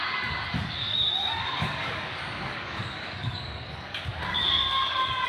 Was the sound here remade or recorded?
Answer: remade